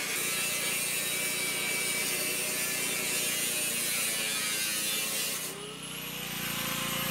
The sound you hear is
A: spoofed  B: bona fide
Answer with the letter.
B